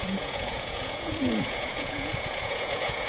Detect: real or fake fake